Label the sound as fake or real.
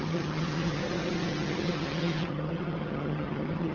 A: fake